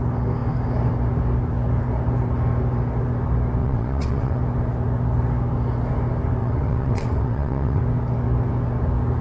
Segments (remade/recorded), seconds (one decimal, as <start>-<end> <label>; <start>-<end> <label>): 0.0-3.6 recorded; 3.6-4.4 remade; 4.4-6.4 recorded; 6.4-7.8 remade; 7.8-9.2 recorded

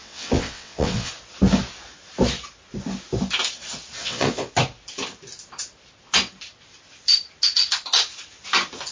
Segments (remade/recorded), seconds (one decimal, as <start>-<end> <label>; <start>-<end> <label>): 0.0-1.1 remade; 1.1-4.0 recorded; 4.0-4.5 remade; 4.5-8.9 recorded

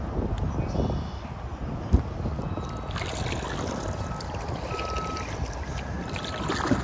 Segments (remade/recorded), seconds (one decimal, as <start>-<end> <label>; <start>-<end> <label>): 0.0-6.8 recorded

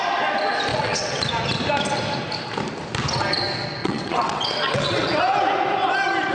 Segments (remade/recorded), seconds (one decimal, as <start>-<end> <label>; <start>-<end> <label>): 0.0-0.7 recorded; 0.7-1.3 remade; 1.3-3.8 recorded; 3.8-5.2 remade; 5.2-6.3 recorded

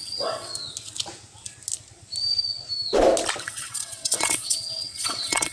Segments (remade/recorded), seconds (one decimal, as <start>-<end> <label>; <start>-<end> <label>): 0.0-0.5 remade; 0.5-3.4 recorded; 3.4-5.5 remade

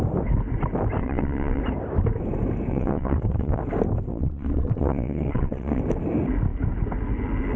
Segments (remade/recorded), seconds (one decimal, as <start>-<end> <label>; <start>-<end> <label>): 0.0-1.0 recorded; 1.0-1.6 remade; 1.6-2.7 recorded; 2.7-3.6 remade; 3.6-4.1 recorded; 4.1-5.8 remade; 5.8-7.6 recorded

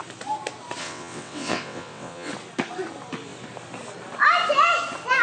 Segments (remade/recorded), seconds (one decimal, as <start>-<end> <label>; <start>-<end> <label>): 0.0-0.8 recorded; 0.8-2.3 remade; 2.3-5.2 recorded